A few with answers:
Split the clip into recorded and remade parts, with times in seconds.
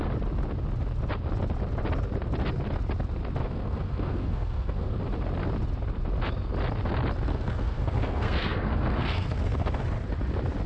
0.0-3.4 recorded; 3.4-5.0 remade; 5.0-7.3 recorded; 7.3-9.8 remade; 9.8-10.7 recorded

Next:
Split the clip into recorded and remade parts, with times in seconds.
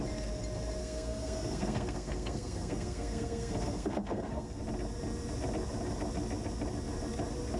0.0-0.8 recorded; 0.8-4.6 remade; 4.6-7.6 recorded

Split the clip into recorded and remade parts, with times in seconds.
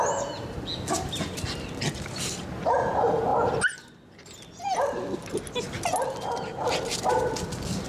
0.0-7.9 recorded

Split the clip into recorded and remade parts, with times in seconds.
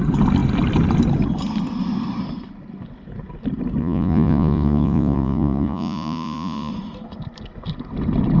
0.0-3.8 recorded; 3.8-6.7 remade; 6.7-8.4 recorded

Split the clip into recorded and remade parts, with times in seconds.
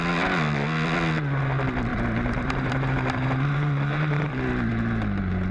0.0-1.9 recorded; 1.9-4.7 remade; 4.7-5.5 recorded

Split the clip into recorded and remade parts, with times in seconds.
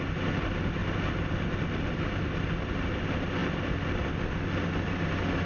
0.0-5.5 recorded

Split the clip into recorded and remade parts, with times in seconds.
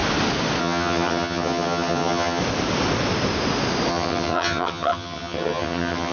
0.0-0.6 recorded; 0.6-2.4 remade; 2.4-3.9 recorded; 3.9-6.1 remade